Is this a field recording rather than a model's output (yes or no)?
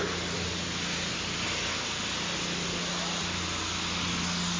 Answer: yes